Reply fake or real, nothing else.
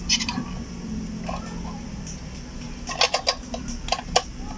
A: real